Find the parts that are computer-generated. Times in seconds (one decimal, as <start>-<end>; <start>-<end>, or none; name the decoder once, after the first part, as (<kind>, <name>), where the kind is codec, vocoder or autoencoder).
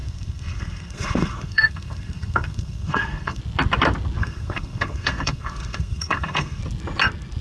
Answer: 0.0-3.4 (codec, SNAC); 4.2-6.6